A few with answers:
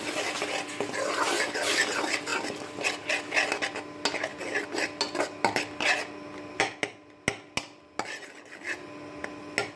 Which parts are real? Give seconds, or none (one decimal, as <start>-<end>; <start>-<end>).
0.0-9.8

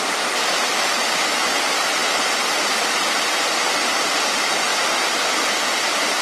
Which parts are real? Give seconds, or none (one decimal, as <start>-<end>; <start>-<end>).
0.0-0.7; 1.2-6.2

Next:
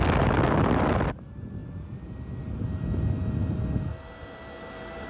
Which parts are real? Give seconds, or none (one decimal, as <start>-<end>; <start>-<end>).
0.0-5.1